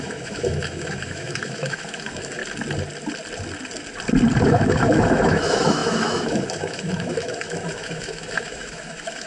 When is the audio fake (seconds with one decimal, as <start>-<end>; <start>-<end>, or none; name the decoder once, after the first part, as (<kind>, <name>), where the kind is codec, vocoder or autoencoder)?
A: 0.0-2.4 (autoencoder, DAC-VAE); 4.4-9.3

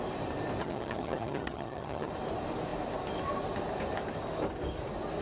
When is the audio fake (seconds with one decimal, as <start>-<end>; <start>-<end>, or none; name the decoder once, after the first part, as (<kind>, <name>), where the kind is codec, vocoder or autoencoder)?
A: 0.6-2.1 (vocoder, HiFi-GAN)

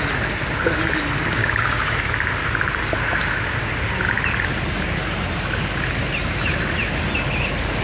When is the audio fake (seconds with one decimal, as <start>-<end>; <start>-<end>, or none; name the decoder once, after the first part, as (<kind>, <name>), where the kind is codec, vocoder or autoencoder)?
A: 1.4-2.1 (codec, DAC)

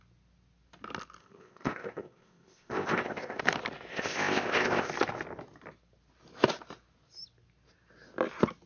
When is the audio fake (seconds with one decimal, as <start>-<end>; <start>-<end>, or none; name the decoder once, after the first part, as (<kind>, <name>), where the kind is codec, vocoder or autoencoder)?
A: 1.2-3.4 (codec, ZipCodec); 3.9-4.9

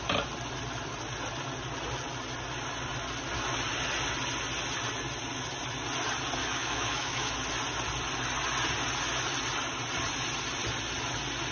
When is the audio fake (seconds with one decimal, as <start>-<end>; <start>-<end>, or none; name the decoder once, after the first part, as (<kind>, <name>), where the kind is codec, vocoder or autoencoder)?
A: 6.4-7.3 (autoencoder, DAC-VAE)